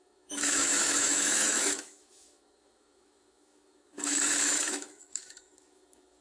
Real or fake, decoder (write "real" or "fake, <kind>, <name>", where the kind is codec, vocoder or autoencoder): fake, autoencoder, DAC-VAE